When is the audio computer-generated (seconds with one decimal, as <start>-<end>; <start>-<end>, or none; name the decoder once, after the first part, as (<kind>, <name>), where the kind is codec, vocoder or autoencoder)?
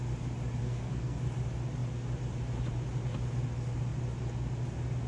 0.6-1.2 (codec, SNAC)